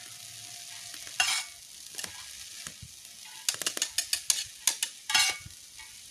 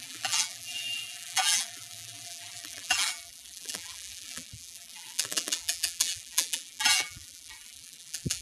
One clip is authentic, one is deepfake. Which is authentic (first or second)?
first